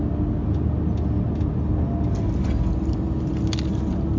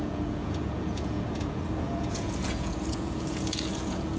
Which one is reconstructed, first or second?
second